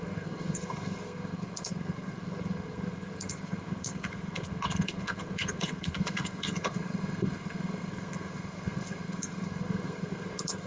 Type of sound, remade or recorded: remade